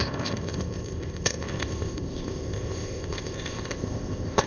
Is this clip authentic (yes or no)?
no